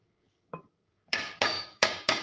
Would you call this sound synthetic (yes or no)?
yes